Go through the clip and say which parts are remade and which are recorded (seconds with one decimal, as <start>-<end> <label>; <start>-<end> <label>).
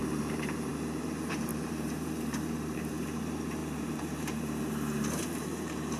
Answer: 0.0-6.0 remade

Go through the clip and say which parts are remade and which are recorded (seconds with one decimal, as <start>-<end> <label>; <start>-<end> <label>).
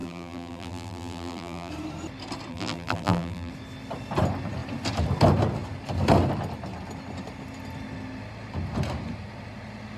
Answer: 0.0-1.7 remade; 1.7-2.5 recorded; 2.5-3.5 remade; 3.5-10.0 recorded